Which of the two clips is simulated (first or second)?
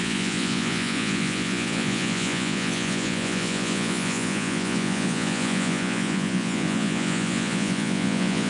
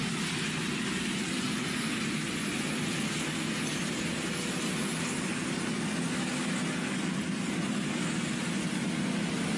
first